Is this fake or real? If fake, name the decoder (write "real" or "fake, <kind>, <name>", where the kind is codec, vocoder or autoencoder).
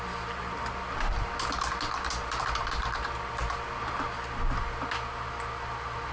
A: real